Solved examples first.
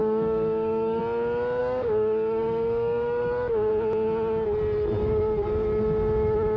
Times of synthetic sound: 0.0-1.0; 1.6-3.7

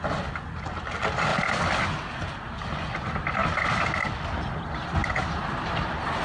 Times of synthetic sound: 5.0-6.2

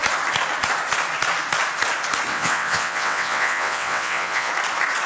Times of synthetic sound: 2.3-4.5

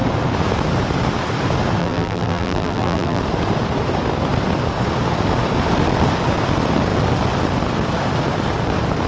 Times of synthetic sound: 1.8-3.2